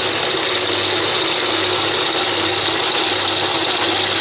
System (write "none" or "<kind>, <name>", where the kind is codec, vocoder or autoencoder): none